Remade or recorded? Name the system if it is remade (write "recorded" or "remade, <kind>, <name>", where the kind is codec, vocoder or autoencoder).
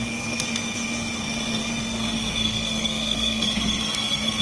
remade, codec, SNAC